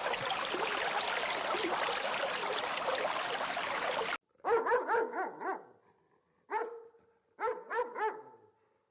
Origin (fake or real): real